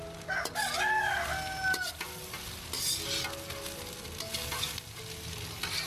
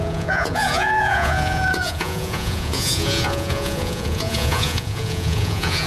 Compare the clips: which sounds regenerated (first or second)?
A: second